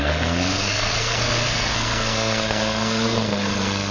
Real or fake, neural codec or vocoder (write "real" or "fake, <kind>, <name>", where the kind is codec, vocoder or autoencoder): fake, codec, SNAC